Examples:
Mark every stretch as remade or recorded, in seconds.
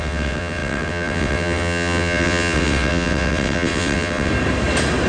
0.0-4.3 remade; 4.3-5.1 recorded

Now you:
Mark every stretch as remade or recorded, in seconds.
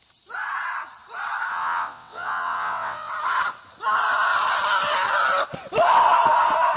0.0-1.5 recorded; 1.5-3.1 remade; 3.1-6.8 recorded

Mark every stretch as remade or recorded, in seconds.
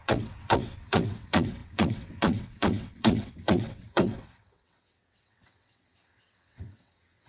0.0-7.3 remade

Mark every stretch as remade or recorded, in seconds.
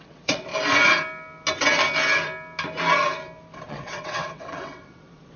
0.0-0.5 remade; 0.5-3.7 recorded; 3.7-5.4 remade